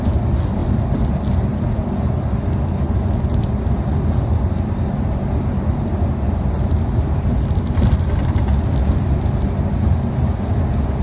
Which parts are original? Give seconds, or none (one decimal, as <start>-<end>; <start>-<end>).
0.0-11.0